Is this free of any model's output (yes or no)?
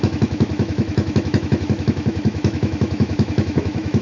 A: no